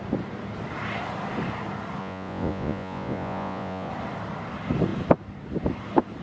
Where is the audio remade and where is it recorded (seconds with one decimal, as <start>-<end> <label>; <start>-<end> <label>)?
0.0-2.0 recorded; 2.0-3.9 remade; 3.9-6.2 recorded